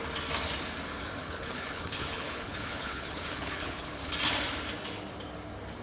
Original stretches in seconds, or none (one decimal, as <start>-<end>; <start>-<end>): 0.0-1.2; 4.1-5.8